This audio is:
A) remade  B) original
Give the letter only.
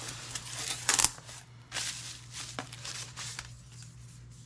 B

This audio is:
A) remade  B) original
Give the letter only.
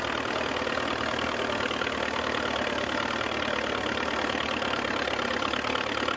B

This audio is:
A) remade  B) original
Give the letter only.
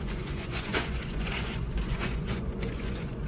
A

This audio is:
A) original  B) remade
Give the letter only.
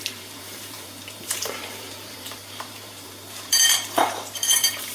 B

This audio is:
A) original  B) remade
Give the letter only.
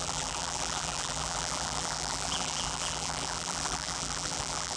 B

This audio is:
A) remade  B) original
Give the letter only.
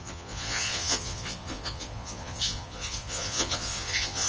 A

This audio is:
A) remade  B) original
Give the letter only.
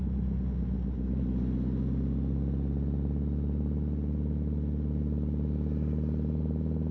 B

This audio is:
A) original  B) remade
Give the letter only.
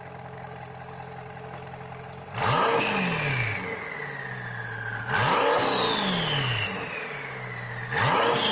A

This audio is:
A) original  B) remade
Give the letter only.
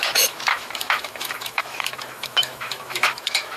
B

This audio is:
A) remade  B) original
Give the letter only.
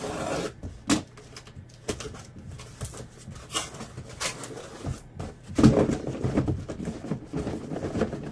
B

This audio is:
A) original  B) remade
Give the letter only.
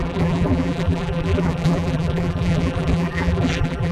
B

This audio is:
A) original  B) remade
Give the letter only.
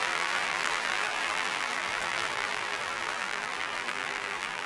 B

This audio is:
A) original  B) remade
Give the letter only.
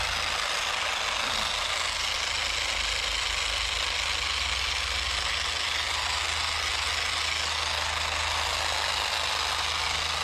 A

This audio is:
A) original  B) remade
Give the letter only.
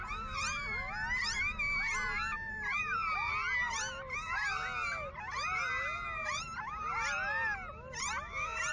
A